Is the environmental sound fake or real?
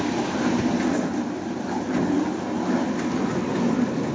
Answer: real